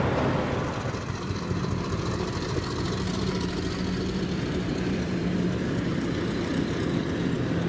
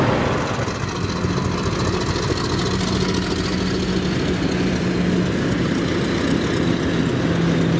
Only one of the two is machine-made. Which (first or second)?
first